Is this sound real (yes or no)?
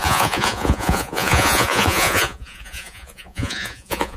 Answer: no